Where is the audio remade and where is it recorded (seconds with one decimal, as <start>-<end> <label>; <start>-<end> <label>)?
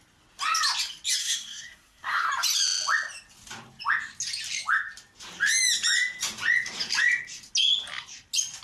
0.0-1.2 recorded; 1.2-2.3 remade; 2.3-8.6 recorded